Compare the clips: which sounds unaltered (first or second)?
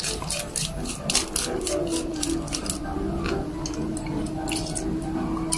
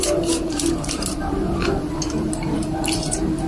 first